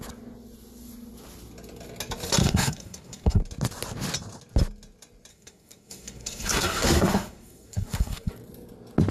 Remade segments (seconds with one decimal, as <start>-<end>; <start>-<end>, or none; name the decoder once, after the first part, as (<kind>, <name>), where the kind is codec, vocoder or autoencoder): 2.4-3.4 (codec, SNAC); 5.3-8.3